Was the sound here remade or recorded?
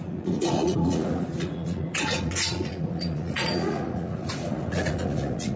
remade